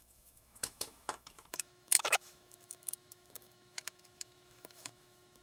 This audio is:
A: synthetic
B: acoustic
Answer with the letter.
A